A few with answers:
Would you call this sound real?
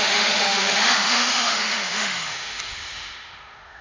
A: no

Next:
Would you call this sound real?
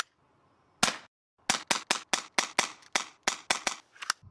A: yes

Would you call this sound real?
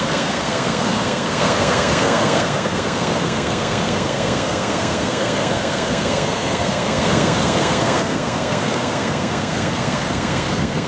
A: no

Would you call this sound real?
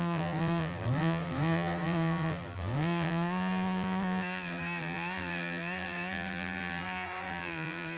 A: no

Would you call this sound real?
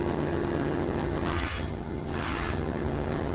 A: no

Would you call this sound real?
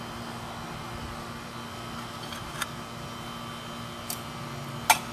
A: yes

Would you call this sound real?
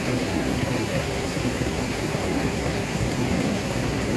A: no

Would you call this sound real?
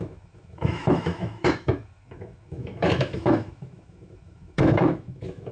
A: no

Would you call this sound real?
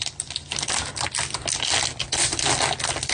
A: yes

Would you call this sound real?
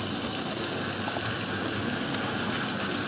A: yes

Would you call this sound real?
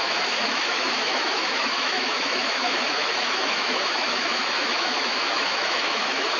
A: no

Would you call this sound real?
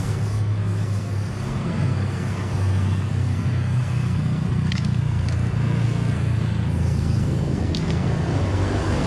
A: no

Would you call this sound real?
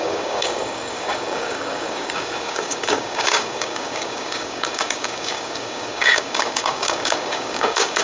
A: no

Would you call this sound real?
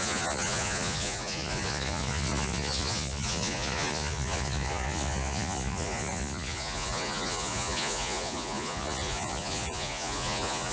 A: no